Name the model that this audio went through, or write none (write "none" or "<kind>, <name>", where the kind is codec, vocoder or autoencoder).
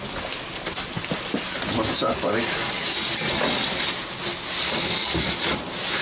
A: none